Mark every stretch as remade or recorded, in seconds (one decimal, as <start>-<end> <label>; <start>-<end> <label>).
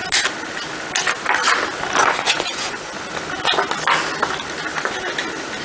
0.0-2.0 recorded; 2.0-2.9 remade; 2.9-5.6 recorded